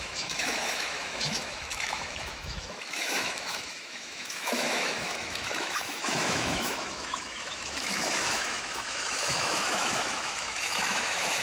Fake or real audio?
fake